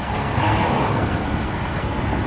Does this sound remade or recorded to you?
remade